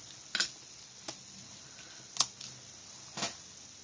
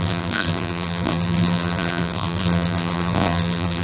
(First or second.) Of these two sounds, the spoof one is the second